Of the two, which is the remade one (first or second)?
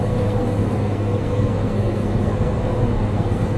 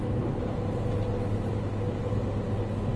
first